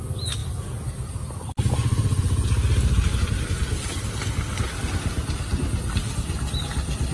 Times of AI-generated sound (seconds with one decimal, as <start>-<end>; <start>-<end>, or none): none